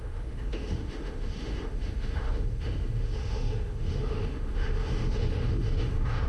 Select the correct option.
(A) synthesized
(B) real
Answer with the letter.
A